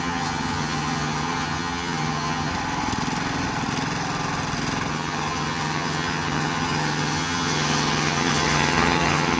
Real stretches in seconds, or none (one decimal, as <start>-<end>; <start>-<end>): 2.5-4.9